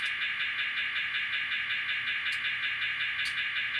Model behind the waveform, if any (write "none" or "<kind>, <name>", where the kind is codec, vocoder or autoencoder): none